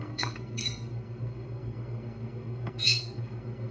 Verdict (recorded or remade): remade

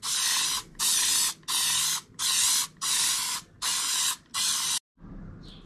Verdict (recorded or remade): recorded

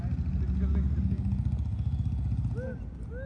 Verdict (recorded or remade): recorded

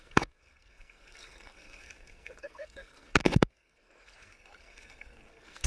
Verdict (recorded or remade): remade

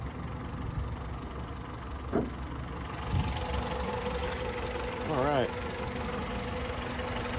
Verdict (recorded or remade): recorded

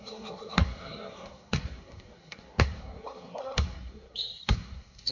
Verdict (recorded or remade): remade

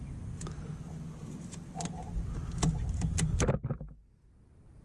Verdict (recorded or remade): recorded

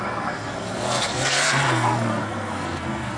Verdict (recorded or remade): remade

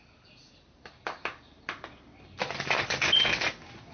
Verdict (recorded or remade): recorded